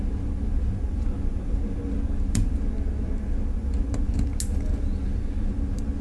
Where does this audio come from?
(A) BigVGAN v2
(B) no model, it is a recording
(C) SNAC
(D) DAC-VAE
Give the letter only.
B